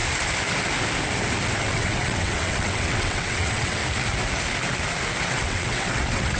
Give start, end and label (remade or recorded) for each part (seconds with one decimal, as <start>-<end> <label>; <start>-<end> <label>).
0.0-1.6 recorded; 1.6-3.8 remade; 3.8-5.2 recorded; 5.2-6.4 remade

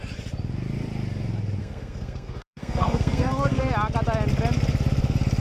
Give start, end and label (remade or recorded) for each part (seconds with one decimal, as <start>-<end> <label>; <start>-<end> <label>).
0.0-1.6 recorded; 1.6-3.7 remade; 3.7-5.4 recorded

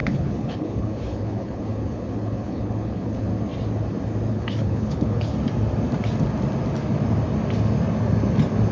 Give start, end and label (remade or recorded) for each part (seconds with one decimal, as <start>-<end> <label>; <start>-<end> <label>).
0.0-3.3 remade; 3.3-4.3 recorded; 4.3-5.3 remade; 5.3-8.7 recorded

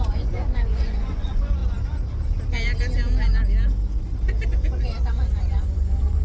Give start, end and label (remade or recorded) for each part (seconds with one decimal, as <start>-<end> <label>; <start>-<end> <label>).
0.0-1.6 remade; 1.6-4.5 recorded; 4.5-6.2 remade

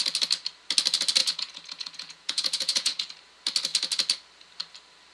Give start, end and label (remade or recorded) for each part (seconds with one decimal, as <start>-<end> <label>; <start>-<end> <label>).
0.0-1.2 recorded; 1.2-3.1 remade; 3.1-5.1 recorded

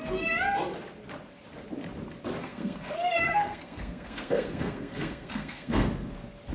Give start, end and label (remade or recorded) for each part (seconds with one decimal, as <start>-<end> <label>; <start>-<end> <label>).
0.0-2.4 recorded; 2.4-5.9 remade; 5.9-6.5 recorded